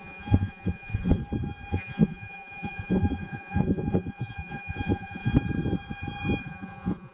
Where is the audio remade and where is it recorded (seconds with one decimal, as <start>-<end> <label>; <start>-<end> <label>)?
0.0-1.2 remade; 1.2-1.7 recorded; 1.7-5.3 remade; 5.3-6.4 recorded; 6.4-7.1 remade